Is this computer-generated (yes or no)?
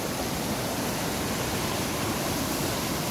no